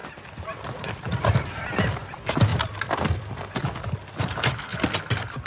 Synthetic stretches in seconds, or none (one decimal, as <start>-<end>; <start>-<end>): 0.0-1.5; 2.5-3.6

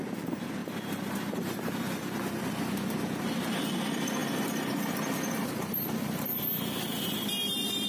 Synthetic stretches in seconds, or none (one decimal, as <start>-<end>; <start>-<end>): 0.6-2.4; 4.2-6.4

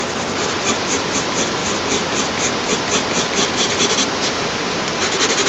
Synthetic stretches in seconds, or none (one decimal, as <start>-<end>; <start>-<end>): none

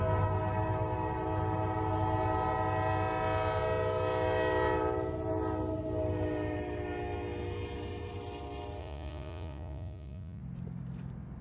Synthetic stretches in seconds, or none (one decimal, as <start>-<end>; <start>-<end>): 8.8-10.4

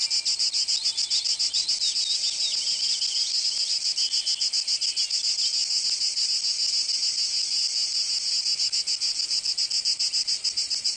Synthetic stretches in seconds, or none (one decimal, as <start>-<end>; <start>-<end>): none